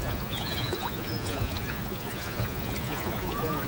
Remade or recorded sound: remade